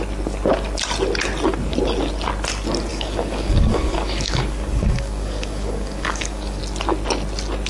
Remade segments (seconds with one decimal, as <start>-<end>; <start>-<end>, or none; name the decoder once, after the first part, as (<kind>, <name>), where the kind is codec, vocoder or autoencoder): 2.9-6.6 (codec, DAC)